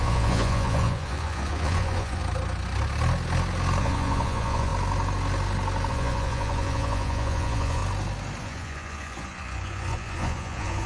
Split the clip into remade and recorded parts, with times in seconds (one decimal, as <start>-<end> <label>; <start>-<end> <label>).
0.0-2.2 remade; 2.2-3.8 recorded; 3.8-4.7 remade; 4.7-5.9 recorded; 5.9-7.8 remade; 7.8-8.4 recorded; 8.4-10.9 remade

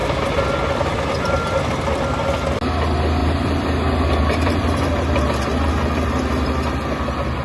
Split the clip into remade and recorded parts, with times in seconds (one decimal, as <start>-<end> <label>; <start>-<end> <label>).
0.0-1.6 remade; 1.6-3.2 recorded; 3.2-5.2 remade; 5.2-7.4 recorded

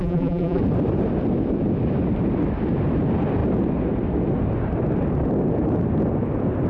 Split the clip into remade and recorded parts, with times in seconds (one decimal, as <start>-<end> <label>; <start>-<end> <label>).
0.0-0.6 remade; 0.6-6.7 recorded